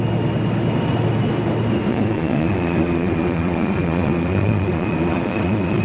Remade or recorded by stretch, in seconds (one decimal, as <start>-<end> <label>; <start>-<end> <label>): 0.0-1.9 recorded; 1.9-5.8 remade